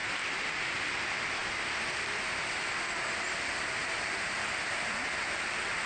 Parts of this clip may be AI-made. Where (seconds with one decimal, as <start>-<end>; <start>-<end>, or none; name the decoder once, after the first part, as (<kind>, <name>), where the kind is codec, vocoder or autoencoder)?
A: 0.0-0.8 (vocoder, BigVGAN v2); 1.4-2.5; 3.8-4.9